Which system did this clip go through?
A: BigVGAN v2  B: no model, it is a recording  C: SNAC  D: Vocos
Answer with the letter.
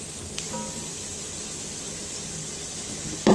B